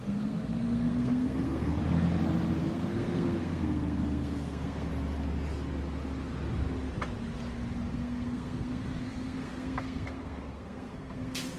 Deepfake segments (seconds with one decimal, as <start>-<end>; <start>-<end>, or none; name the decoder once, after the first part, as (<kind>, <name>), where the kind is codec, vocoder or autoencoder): 0.0-1.8 (codec, SNAC); 2.6-4.9; 7.9-11.6